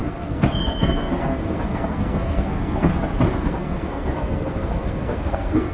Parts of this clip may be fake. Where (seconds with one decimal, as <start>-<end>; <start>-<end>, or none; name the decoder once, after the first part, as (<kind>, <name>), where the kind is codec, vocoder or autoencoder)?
0.0-2.9 (codec, SNAC); 3.4-5.7